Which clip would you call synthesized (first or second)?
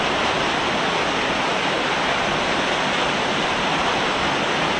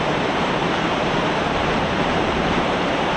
second